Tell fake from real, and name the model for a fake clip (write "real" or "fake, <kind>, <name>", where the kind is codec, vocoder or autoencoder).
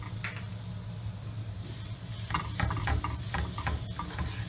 real